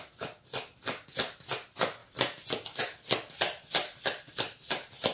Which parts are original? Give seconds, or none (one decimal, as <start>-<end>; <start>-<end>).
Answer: 0.0-5.1